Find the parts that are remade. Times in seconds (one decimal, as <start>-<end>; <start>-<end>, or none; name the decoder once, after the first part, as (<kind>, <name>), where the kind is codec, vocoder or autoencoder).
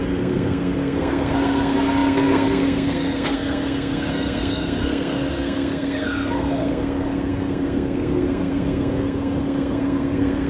0.0-10.5 (codec, SNAC)